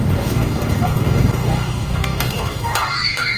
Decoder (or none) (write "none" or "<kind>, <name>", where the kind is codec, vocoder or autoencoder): codec, DAC